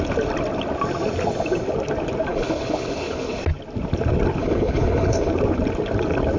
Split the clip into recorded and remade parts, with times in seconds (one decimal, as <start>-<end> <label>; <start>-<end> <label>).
0.0-2.3 recorded; 2.3-3.4 remade; 3.4-4.4 recorded; 4.4-5.3 remade; 5.3-6.4 recorded